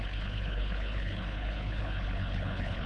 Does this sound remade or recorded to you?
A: remade